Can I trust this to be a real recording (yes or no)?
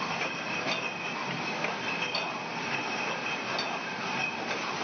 yes